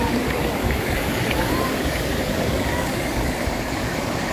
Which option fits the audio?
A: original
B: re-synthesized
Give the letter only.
B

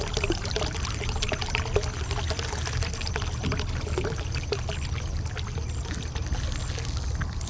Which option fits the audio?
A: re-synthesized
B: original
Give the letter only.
B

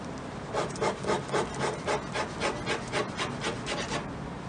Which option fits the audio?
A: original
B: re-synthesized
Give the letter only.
A